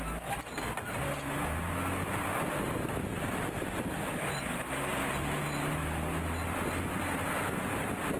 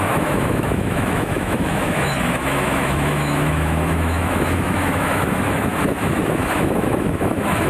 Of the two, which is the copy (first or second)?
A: second